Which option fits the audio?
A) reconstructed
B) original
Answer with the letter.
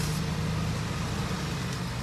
B